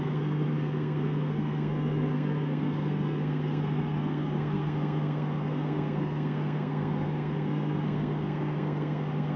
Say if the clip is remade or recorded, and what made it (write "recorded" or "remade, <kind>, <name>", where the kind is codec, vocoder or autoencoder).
remade, codec, SNAC